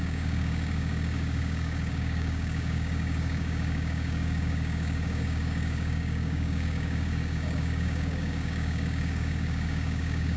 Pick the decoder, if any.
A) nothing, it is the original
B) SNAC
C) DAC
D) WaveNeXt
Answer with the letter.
C